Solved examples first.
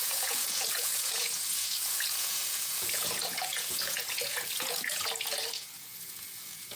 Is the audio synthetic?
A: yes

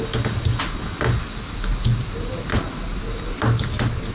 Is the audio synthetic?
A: no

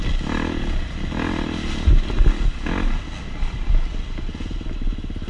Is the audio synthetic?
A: no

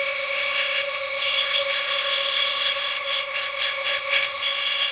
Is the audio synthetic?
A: yes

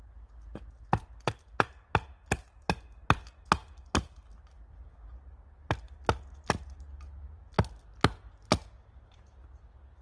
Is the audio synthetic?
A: no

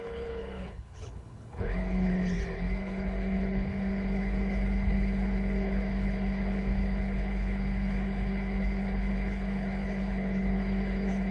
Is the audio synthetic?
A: yes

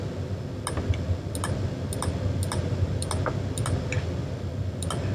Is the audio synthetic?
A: no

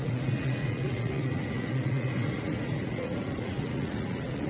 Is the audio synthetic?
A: yes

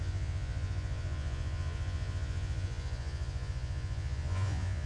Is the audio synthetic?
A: yes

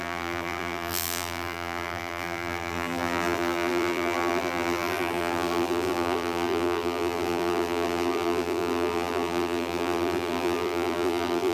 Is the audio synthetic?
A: yes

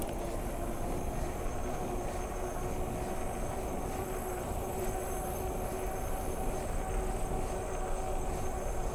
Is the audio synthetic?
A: no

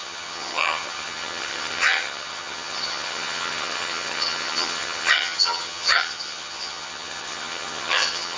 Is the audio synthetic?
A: yes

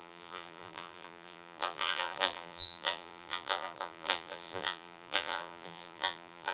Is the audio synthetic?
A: yes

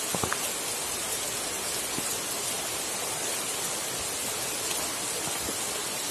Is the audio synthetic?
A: no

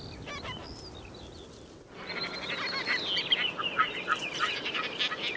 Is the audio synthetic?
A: no